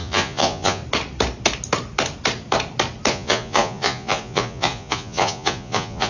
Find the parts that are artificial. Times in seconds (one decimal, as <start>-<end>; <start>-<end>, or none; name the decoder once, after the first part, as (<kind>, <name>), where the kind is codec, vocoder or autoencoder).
0.0-0.8 (vocoder, Vocos); 3.1-6.1